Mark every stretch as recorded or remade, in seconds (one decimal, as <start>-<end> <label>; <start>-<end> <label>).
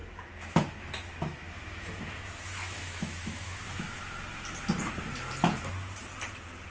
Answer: 0.0-4.0 remade; 4.0-6.7 recorded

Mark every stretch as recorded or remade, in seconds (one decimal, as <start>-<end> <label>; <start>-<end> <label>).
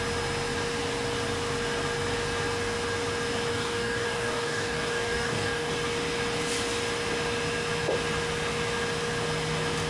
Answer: 0.0-3.5 recorded; 3.5-5.7 remade; 5.7-9.9 recorded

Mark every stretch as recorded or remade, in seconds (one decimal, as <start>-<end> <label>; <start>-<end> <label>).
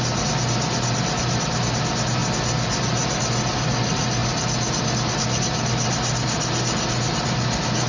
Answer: 0.0-7.9 recorded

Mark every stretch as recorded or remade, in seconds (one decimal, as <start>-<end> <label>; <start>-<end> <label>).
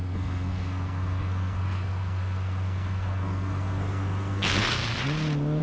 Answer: 0.0-4.8 remade; 4.8-5.6 recorded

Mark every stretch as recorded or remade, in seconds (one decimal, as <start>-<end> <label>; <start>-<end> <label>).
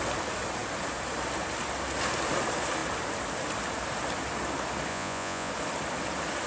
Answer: 0.0-4.9 recorded; 4.9-5.5 remade; 5.5-6.5 recorded